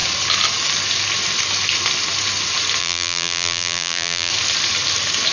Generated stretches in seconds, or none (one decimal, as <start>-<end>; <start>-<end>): 2.8-4.3